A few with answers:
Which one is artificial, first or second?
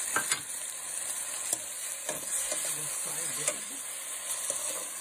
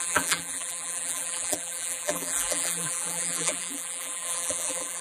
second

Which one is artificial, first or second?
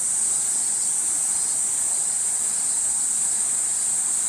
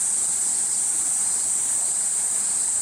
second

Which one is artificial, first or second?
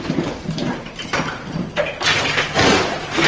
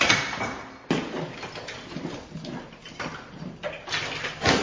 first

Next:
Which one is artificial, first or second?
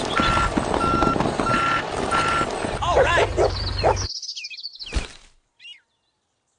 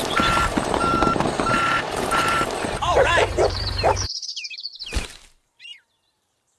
second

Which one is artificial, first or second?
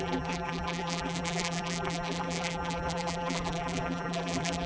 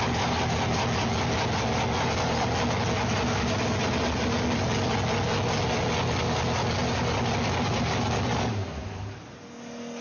first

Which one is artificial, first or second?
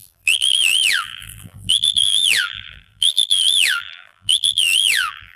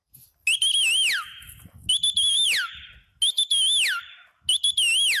first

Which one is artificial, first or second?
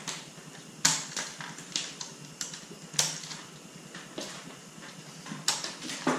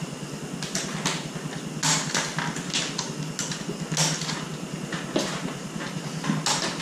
first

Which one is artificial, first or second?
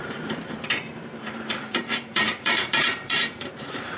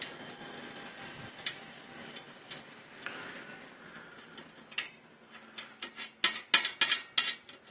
first